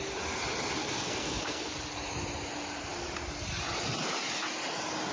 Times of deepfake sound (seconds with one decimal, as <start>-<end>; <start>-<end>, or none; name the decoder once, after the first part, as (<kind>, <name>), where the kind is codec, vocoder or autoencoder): 0.8-1.7 (codec, SNAC)